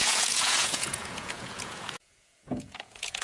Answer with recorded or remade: remade